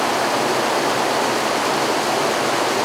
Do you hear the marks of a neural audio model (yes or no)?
no